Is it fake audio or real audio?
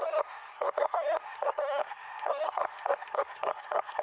fake